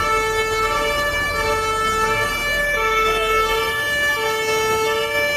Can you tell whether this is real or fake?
real